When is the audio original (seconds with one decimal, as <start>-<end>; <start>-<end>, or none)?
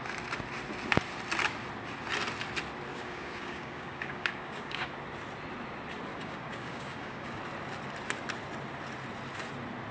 0.0-2.9; 4.9-6.1; 7.4-9.9